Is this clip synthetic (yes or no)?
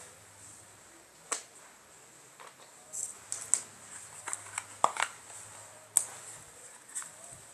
no